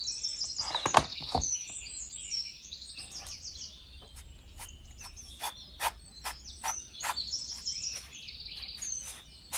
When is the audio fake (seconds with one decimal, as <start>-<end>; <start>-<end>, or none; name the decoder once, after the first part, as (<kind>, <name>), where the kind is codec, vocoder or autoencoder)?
1.1-2.9 (autoencoder, DAC-VAE)